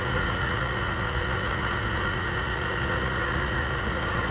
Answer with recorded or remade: remade